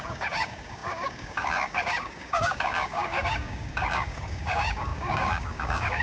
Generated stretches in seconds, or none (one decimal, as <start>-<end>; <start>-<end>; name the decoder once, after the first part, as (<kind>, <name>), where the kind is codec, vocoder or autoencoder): 0.0-6.0 (codec, DAC)